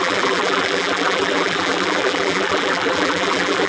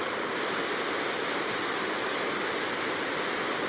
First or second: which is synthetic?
first